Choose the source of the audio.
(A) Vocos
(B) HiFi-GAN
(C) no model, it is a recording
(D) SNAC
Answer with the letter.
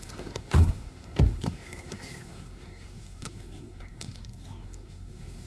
D